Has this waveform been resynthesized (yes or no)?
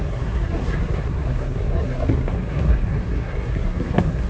yes